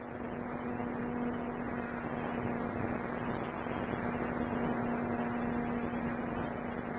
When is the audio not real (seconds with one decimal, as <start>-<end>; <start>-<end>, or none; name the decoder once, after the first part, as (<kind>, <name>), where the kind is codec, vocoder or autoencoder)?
none